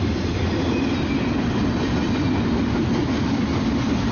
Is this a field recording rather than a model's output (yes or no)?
yes